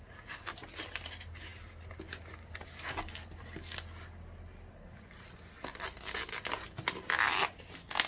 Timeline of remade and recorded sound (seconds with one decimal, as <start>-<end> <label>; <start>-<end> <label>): 0.0-8.1 recorded